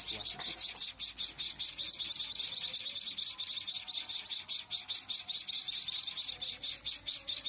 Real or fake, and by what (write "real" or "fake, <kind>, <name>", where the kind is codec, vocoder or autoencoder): real